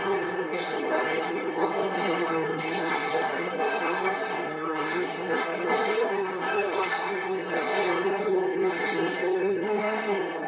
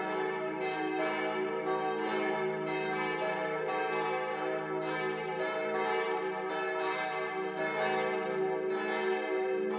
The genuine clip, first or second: second